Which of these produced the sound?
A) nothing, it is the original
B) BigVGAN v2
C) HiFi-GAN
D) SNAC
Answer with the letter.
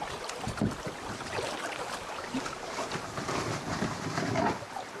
B